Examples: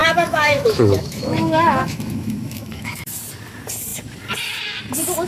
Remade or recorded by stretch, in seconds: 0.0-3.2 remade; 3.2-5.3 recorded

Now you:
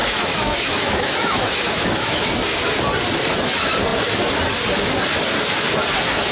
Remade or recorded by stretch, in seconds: 0.0-2.3 remade; 2.3-6.3 recorded

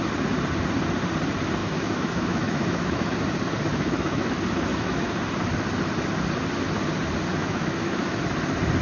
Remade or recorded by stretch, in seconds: 0.0-1.6 recorded; 1.6-3.2 remade; 3.2-3.7 recorded; 3.7-4.3 remade; 4.3-4.7 recorded; 4.7-5.2 remade; 5.2-7.4 recorded; 7.4-8.2 remade; 8.2-8.8 recorded